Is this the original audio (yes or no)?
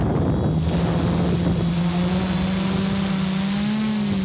yes